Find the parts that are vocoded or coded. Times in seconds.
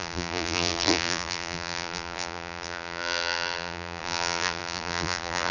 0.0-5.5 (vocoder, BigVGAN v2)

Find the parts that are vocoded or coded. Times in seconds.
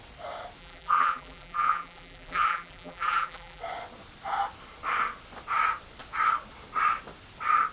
0.6-3.6 (vocoder, BigVGAN v2)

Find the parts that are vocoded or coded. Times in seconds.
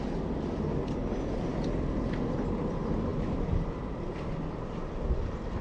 1.5-2.0 (vocoder, BigVGAN v2); 3.1-5.6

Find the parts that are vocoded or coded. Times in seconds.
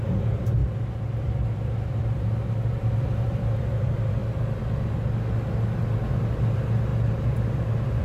0.0-0.6 (vocoder, BigVGAN v2); 1.2-4.2; 6.1-6.9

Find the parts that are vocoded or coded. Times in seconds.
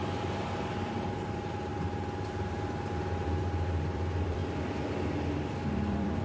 0.0-1.7 (vocoder, BigVGAN v2); 2.5-4.4; 5.0-6.2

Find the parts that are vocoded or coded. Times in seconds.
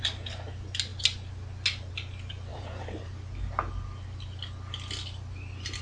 2.5-3.1 (vocoder, BigVGAN v2)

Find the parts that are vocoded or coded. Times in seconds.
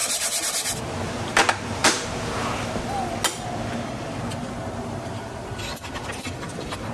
0.0-2.8 (vocoder, BigVGAN v2); 4.4-5.9